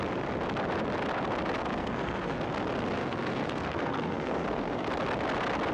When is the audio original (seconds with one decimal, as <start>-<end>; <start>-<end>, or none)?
0.0-1.6; 2.4-3.0; 4.9-5.7